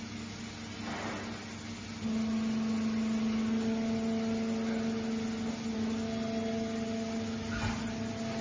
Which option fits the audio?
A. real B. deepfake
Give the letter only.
A